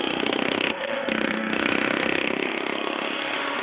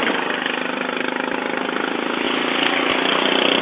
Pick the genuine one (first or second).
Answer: second